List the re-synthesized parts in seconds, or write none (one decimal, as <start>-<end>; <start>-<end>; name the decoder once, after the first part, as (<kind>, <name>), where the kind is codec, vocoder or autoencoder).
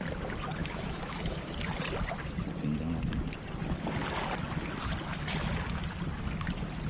0.6-1.5 (autoencoder, DAC-VAE)